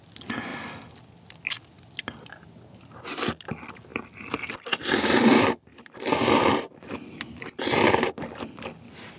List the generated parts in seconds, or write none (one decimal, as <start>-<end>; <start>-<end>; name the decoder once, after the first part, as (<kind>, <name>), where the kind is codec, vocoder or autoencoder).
0.5-2.2 (vocoder, BigVGAN v2); 3.9-8.0